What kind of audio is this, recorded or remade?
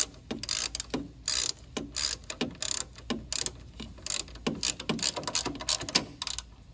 recorded